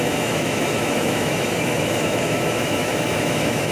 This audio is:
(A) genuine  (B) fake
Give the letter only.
B